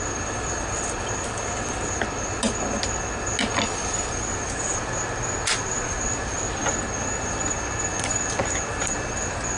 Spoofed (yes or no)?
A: no